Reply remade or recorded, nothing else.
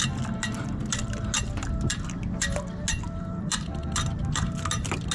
recorded